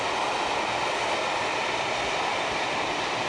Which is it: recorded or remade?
recorded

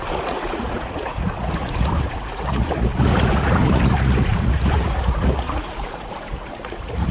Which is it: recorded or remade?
remade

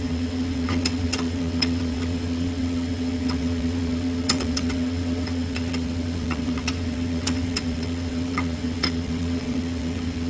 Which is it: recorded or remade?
remade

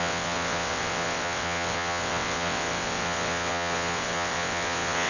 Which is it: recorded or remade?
remade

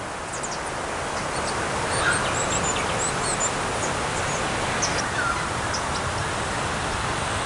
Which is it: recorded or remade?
recorded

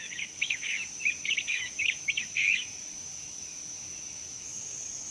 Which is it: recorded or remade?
remade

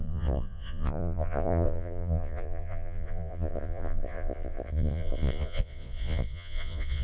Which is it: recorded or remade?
remade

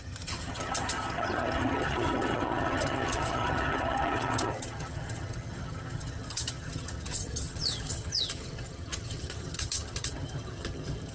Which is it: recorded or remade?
remade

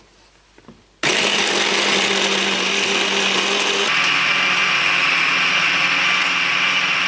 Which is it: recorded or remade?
recorded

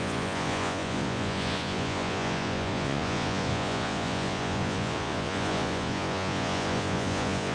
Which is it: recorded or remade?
remade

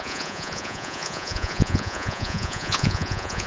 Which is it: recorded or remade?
remade